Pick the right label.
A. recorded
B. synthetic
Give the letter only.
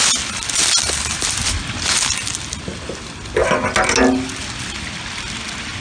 A